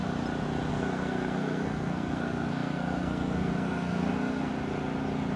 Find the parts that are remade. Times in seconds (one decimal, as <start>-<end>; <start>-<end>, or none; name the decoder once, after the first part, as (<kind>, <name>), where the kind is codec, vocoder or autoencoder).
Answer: 0.7-4.5 (codec, SNAC)